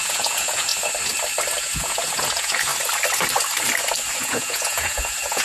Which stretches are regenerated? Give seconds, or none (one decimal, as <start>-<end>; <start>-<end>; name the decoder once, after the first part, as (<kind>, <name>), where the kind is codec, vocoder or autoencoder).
0.0-0.7 (vocoder, Vocos); 1.6-2.7; 4.1-5.4